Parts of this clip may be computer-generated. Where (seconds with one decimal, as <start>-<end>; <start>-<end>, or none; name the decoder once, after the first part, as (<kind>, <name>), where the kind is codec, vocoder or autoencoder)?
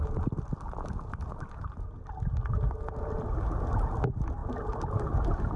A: none